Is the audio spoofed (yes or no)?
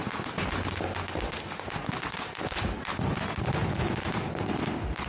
no